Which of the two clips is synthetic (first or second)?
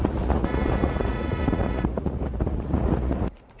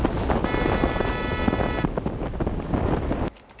first